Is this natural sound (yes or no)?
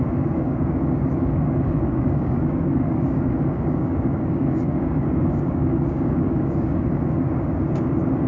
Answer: no